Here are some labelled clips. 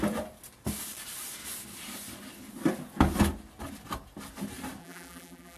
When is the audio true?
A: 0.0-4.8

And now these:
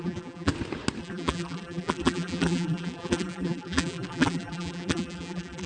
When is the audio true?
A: 0.5-1.0

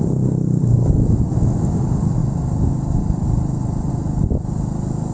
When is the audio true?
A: 0.0-2.2; 3.9-5.1

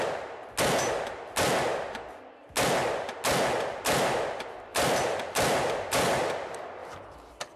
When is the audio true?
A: 0.0-4.7; 6.3-6.8

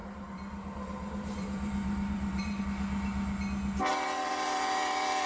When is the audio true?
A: 2.6-3.9